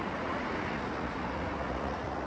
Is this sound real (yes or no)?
no